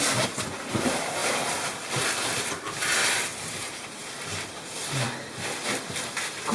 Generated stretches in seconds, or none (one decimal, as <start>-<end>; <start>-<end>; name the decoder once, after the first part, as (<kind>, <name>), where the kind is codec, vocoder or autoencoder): 3.3-4.9 (vocoder, BigVGAN v2)